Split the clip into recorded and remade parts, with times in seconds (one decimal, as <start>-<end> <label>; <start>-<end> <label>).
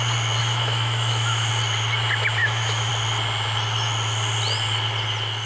0.0-0.4 recorded; 0.4-1.5 remade; 1.5-2.4 recorded; 2.4-2.9 remade; 2.9-5.5 recorded